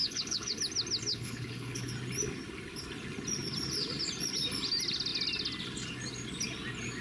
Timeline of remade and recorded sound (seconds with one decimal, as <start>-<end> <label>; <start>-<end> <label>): 0.0-0.6 remade; 0.6-1.1 recorded; 1.1-1.9 remade; 1.9-7.0 recorded